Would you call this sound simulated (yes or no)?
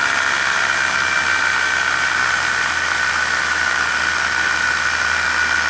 no